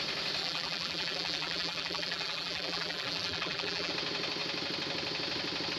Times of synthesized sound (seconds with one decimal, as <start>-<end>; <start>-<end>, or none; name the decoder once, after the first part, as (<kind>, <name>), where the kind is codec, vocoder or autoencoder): 0.4-3.9 (vocoder, BigVGAN v2)